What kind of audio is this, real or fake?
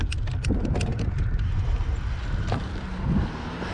real